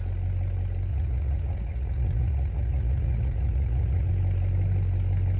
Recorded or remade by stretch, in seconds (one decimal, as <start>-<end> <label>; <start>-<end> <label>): 0.0-0.9 recorded; 0.9-4.1 remade; 4.1-5.4 recorded